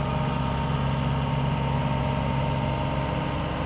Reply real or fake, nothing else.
real